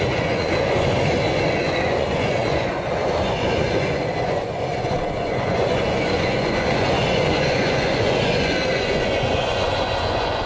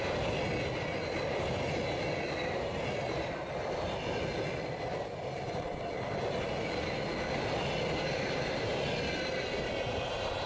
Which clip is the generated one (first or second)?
first